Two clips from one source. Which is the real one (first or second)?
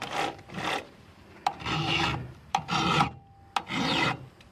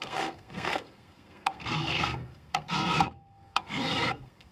first